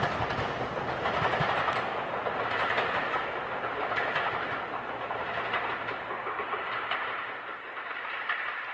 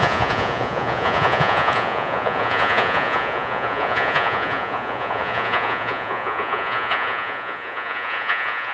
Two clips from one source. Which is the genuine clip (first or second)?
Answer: first